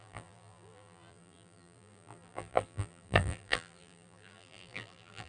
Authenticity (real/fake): fake